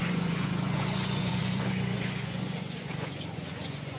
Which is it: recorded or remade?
remade